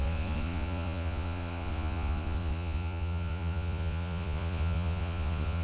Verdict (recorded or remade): remade